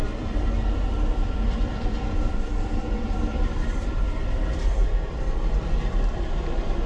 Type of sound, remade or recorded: remade